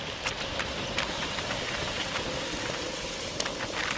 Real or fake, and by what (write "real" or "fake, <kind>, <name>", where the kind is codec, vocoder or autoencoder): real